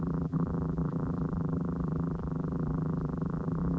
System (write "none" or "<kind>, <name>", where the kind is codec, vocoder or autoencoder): vocoder, BigVGAN v2